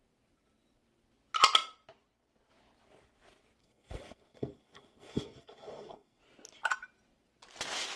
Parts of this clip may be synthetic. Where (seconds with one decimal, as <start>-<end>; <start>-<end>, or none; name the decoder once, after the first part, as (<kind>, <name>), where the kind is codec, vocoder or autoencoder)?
3.6-6.2 (codec, SNAC)